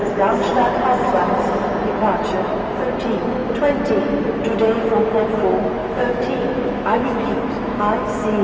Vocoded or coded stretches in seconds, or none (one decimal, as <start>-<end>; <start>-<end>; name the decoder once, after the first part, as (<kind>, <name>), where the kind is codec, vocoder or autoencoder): 5.8-7.8 (autoencoder, DAC-VAE)